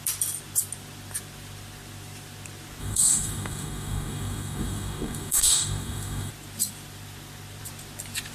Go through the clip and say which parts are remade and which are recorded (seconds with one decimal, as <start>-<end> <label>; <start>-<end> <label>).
0.0-2.8 recorded; 2.8-6.3 remade; 6.3-8.3 recorded